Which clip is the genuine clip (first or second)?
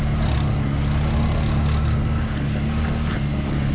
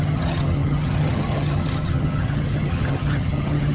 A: first